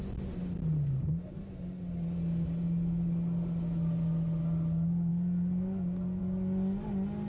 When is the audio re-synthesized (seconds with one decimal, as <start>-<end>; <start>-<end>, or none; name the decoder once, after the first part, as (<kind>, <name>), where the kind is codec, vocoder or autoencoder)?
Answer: none